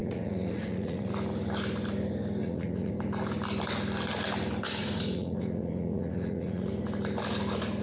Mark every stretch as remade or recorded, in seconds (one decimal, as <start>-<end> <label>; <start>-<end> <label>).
0.0-1.1 remade; 1.1-2.4 recorded; 2.4-2.9 remade; 2.9-4.8 recorded; 4.8-6.7 remade; 6.7-7.8 recorded